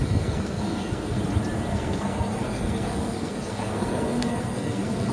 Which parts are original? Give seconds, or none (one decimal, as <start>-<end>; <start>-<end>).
1.2-1.7